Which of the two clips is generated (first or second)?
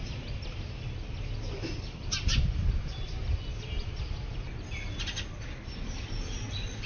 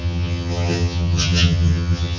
second